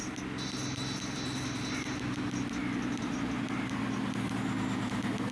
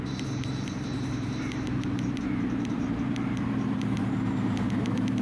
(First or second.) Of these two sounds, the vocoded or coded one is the second